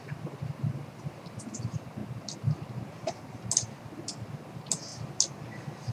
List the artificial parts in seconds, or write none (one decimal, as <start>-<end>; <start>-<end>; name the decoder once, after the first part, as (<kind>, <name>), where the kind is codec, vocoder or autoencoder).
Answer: none